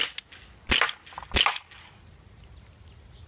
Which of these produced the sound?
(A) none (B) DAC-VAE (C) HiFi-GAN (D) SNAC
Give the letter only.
A